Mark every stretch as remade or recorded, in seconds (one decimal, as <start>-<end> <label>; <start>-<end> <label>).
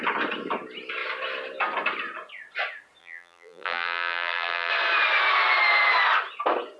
0.0-3.0 recorded; 3.0-4.7 remade; 4.7-6.8 recorded